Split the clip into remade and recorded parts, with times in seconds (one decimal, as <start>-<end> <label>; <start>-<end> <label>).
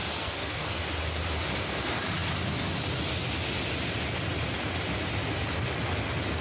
0.0-0.8 remade; 0.8-6.4 recorded